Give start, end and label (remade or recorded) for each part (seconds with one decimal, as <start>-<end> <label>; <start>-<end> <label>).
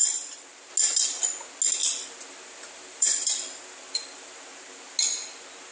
0.0-0.7 remade; 0.7-1.8 recorded; 1.8-4.4 remade; 4.4-5.7 recorded